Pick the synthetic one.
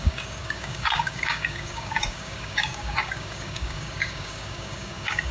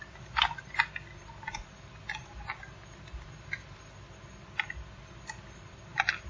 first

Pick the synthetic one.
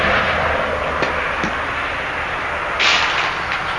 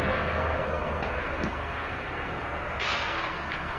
second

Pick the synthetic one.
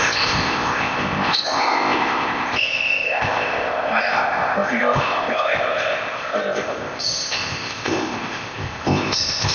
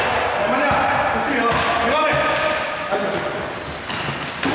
first